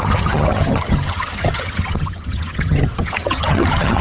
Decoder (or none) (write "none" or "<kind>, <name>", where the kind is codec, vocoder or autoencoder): vocoder, HiFi-GAN